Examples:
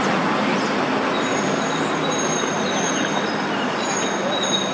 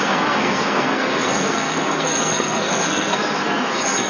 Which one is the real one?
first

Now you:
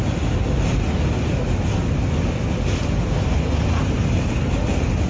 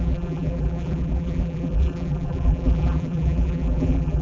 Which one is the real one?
first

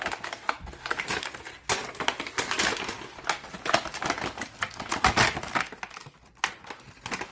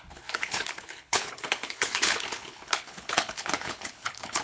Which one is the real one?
first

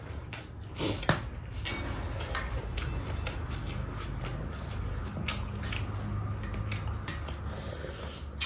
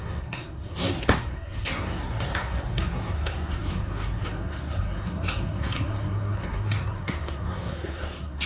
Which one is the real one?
first